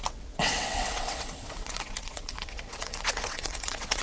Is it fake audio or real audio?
fake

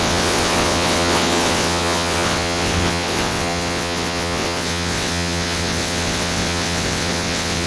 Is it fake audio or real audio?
fake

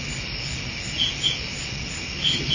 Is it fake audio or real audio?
real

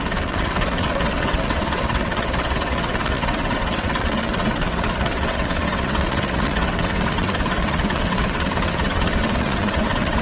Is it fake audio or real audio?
fake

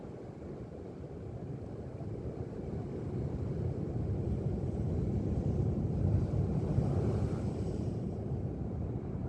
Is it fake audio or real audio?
real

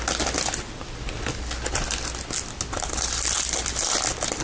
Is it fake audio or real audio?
real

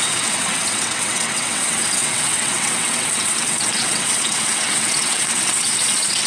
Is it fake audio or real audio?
fake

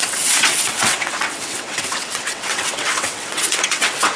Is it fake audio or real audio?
fake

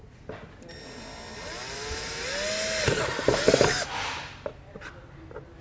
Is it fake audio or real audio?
real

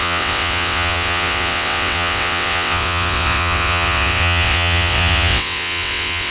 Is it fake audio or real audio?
fake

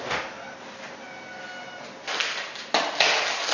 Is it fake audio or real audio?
real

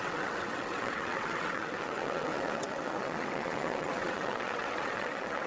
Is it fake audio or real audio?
fake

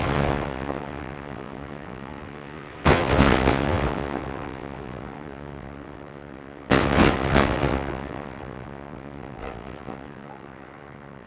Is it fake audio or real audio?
fake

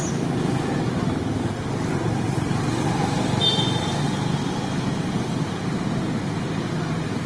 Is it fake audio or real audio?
real